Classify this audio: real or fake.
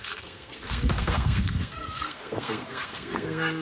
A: fake